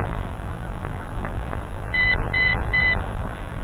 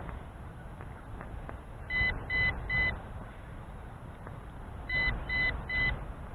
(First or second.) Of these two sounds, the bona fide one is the second